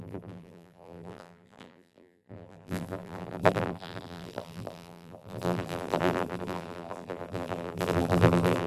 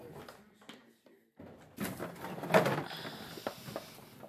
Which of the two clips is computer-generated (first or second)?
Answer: first